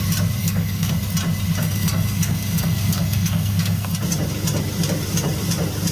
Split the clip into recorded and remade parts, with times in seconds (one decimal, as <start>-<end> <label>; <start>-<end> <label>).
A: 0.0-0.4 recorded; 0.4-0.9 remade; 0.9-1.6 recorded; 1.6-3.9 remade; 3.9-5.9 recorded